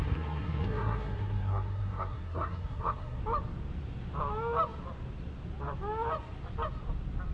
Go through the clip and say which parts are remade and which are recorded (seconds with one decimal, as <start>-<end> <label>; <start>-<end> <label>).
0.0-3.2 remade; 3.2-7.3 recorded